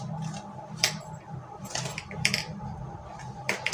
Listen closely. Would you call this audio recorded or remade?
remade